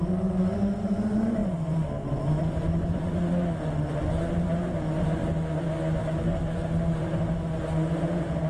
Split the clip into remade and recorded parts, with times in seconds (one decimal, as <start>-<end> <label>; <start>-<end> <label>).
0.0-8.5 recorded